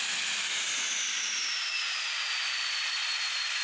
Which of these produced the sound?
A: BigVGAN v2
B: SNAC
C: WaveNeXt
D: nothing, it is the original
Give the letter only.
D